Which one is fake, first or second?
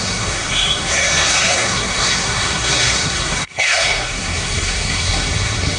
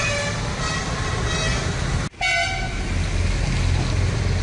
first